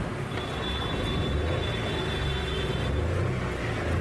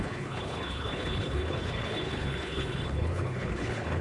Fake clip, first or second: second